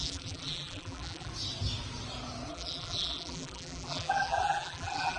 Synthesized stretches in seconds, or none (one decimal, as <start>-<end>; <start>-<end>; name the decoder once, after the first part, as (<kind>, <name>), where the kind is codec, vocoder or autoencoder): 0.0-1.3 (vocoder, BigVGAN v2); 2.5-5.2